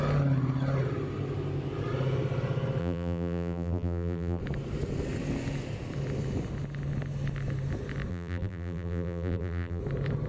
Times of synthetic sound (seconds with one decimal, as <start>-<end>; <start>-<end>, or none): 2.8-4.4; 8.1-9.8